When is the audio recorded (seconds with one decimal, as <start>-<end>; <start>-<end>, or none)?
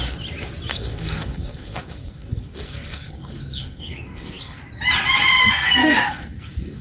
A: 0.0-0.7; 4.6-5.4